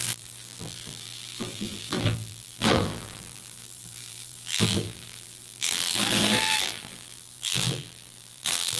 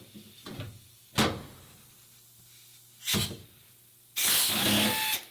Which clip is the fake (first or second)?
first